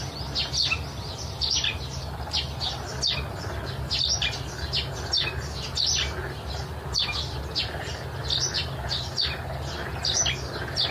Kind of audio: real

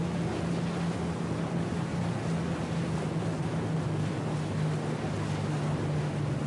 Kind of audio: real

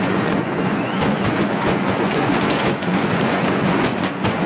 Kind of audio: fake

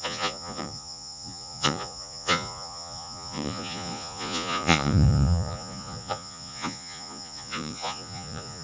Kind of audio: fake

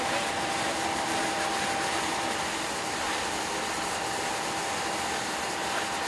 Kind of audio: real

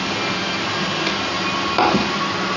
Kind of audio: real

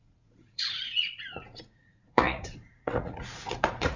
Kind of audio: fake